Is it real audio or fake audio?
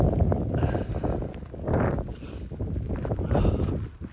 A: real